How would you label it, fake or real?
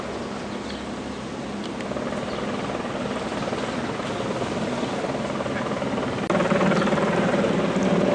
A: real